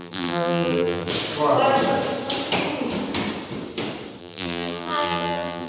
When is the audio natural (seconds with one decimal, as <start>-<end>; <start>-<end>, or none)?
1.1-4.2